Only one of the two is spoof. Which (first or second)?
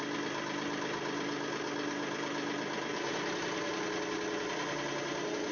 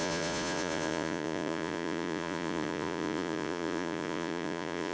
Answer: second